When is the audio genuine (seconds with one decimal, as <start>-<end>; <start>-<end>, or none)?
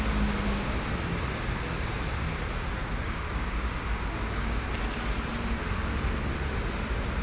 0.0-2.8; 4.6-7.2